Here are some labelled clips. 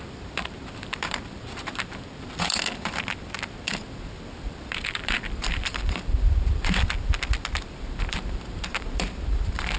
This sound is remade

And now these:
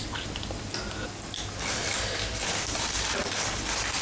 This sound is recorded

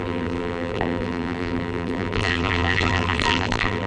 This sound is remade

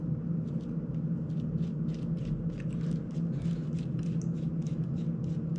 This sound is recorded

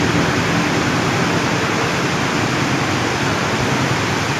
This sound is recorded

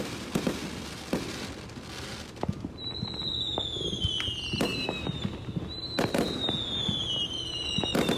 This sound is recorded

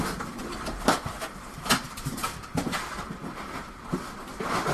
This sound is remade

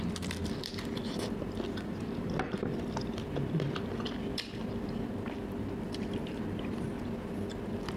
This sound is remade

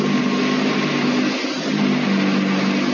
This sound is recorded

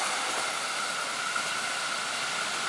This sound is recorded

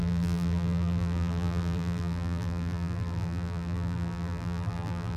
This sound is remade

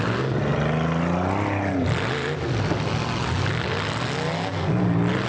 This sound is recorded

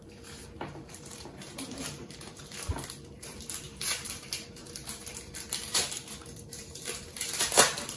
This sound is remade